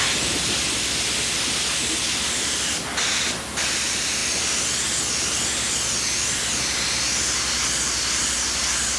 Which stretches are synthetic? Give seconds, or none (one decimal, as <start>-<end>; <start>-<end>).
none